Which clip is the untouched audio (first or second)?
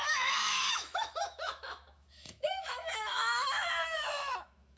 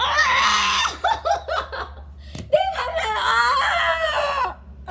second